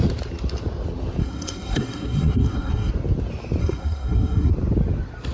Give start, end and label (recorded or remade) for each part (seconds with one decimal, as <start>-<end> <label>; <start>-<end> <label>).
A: 0.0-1.2 recorded; 1.2-2.9 remade; 2.9-3.6 recorded; 3.6-4.5 remade; 4.5-5.3 recorded

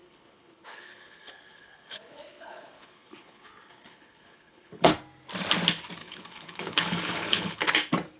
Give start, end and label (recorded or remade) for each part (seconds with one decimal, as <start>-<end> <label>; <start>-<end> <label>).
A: 0.0-4.9 remade; 4.9-6.0 recorded; 6.0-7.7 remade; 7.7-8.2 recorded

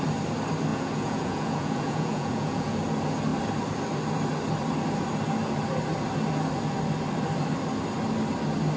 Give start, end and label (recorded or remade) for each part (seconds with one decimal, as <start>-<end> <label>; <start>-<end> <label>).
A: 0.0-0.7 recorded; 0.7-2.8 remade; 2.8-8.8 recorded

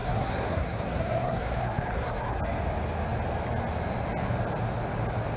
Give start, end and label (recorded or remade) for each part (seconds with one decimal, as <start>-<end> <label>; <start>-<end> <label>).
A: 0.0-2.4 remade; 2.4-5.4 recorded

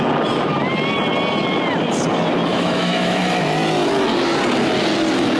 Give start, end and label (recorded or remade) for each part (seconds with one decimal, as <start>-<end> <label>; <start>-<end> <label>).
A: 0.0-2.5 recorded; 2.5-3.2 remade; 3.2-5.4 recorded

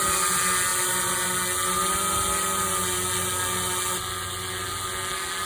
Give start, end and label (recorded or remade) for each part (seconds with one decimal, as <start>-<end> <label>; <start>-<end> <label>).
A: 0.0-5.5 recorded

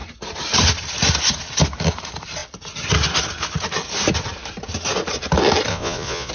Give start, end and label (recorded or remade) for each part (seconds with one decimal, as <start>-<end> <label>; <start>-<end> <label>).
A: 0.0-5.7 recorded; 5.7-6.3 remade

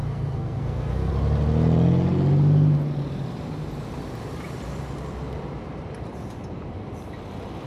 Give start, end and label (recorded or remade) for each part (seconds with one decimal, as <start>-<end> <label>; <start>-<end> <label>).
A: 0.0-1.1 remade; 1.1-7.7 recorded